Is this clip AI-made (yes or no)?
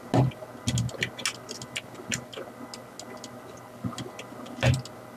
no